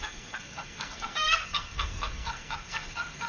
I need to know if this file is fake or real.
fake